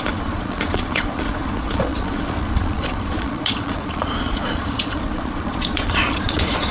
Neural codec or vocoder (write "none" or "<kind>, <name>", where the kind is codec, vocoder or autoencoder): vocoder, Vocos